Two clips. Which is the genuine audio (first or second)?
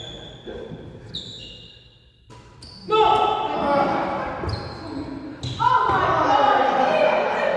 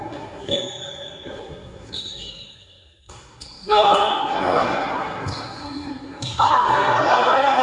first